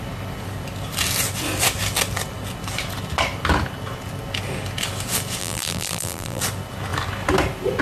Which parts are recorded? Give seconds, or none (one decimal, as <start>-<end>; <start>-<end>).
0.0-5.4; 6.4-7.8

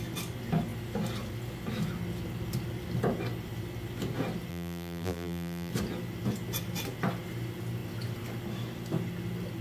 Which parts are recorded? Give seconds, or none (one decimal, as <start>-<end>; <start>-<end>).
0.0-4.5; 5.7-9.6

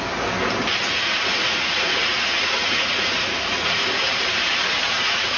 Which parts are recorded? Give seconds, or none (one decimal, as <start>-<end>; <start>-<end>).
0.0-0.8; 3.8-4.7

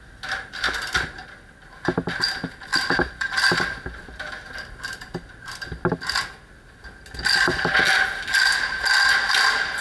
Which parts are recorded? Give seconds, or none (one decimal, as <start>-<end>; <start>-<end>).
0.0-2.7; 4.3-9.8

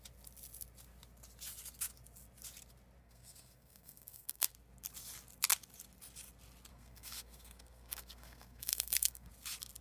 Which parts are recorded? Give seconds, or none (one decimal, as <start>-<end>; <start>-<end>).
0.0-3.0; 4.5-6.7; 9.3-9.8

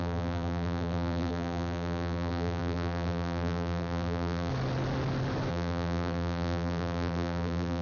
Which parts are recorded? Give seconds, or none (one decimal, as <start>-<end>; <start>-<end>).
4.5-5.5

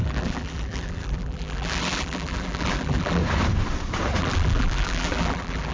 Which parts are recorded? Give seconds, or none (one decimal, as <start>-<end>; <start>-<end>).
3.2-4.2

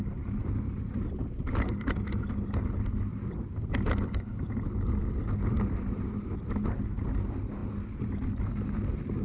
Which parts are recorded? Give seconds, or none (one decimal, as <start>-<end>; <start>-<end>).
0.0-9.2